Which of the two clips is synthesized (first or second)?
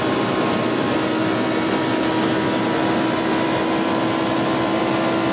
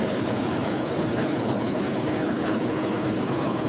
second